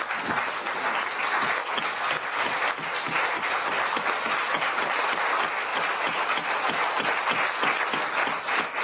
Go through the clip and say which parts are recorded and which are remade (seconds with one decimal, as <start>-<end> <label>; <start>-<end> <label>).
0.0-8.8 recorded